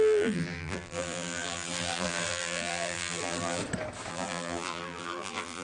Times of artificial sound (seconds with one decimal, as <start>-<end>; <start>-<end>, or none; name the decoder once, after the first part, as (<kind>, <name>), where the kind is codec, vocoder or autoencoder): 0.0-3.6 (vocoder, BigVGAN v2); 4.1-5.6